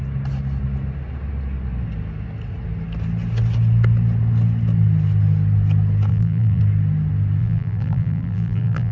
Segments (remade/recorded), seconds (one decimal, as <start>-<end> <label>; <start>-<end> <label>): 0.0-6.1 recorded; 6.1-6.6 remade; 6.6-7.4 recorded; 7.4-8.9 remade